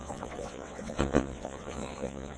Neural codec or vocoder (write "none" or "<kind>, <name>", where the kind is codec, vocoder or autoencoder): vocoder, WaveNeXt